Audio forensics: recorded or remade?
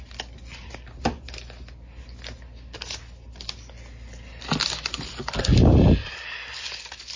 recorded